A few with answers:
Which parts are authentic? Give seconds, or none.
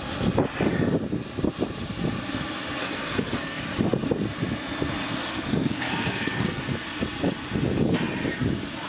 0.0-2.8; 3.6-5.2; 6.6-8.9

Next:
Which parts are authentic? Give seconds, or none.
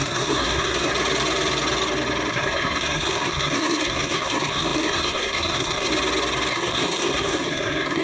0.9-2.3; 5.9-6.5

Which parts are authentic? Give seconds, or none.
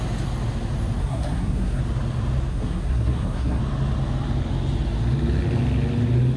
0.0-1.0; 1.8-2.5; 3.6-6.4